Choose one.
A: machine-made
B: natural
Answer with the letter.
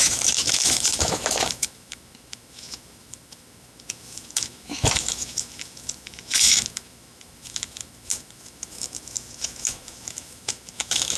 A